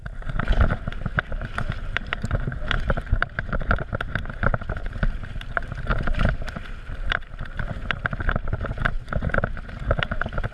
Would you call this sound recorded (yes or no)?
no